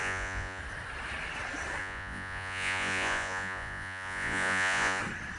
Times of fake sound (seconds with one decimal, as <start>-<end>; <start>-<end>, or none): 0.0-0.6; 1.8-5.0